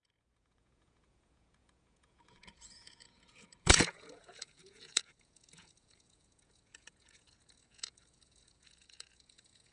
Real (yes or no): no